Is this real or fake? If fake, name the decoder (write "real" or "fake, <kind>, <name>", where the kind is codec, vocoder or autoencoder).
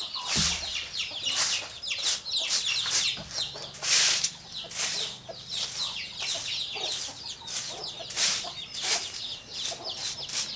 real